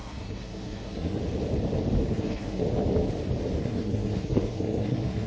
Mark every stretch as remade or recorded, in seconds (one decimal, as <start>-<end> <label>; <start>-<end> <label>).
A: 0.0-1.2 remade; 1.2-2.1 recorded; 2.1-2.6 remade; 2.6-3.6 recorded; 3.6-5.3 remade